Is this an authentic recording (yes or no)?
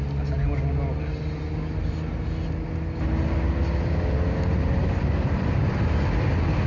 yes